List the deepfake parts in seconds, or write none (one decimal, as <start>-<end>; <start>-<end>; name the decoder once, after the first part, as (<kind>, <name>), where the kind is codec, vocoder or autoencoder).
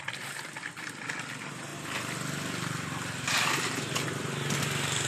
0.0-1.7 (vocoder, BigVGAN v2)